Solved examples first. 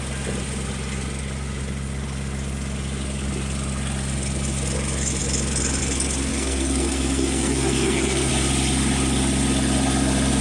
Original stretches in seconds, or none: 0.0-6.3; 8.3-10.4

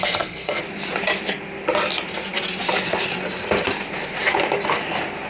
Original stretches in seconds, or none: 0.6-5.3

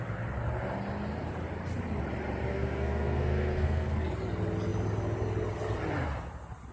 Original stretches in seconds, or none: 0.0-2.5; 4.1-6.7

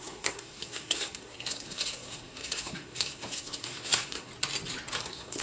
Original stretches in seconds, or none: 4.3-5.0

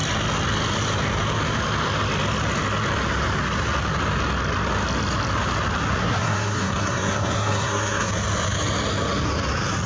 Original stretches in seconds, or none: 0.0-6.0; 8.1-9.9

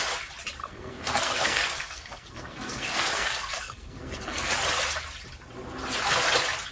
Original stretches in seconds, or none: 0.0-0.6; 4.5-6.7

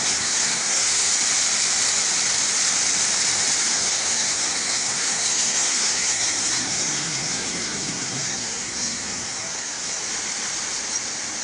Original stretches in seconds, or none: 1.1-3.6; 10.0-11.4